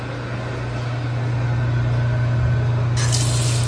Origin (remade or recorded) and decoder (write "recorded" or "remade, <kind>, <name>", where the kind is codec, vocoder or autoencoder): recorded